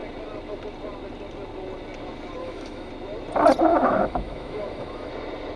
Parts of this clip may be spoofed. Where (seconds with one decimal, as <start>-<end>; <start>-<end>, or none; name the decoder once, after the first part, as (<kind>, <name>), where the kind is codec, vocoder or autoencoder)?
2.4-2.9 (autoencoder, DAC-VAE); 3.7-5.1